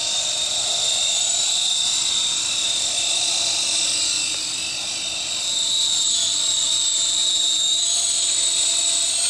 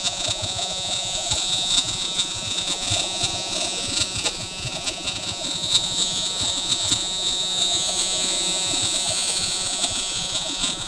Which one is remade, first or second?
second